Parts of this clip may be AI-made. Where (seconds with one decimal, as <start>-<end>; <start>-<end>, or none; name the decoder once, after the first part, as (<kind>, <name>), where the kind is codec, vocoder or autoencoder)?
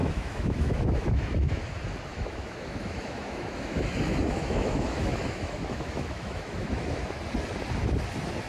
0.0-1.6 (autoencoder, DAC-VAE); 2.1-7.2